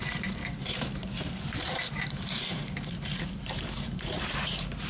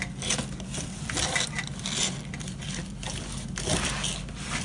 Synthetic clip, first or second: first